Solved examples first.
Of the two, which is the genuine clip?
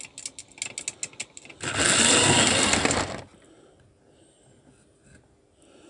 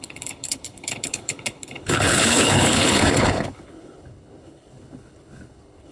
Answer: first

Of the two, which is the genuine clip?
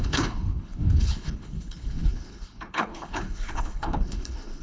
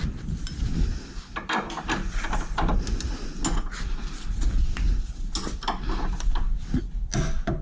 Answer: second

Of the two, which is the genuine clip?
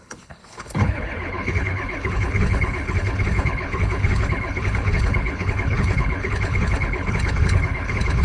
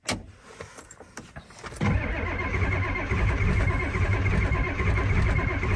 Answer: second